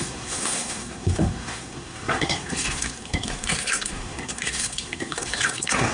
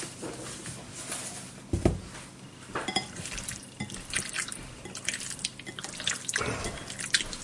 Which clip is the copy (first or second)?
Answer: first